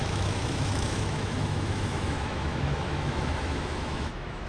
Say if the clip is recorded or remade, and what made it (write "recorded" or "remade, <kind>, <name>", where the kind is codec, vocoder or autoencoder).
remade, autoencoder, DAC-VAE